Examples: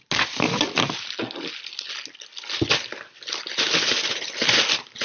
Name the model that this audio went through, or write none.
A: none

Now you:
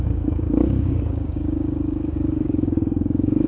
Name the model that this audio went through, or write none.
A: codec, DAC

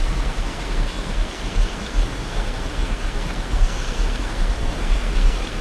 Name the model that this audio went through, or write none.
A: codec, SNAC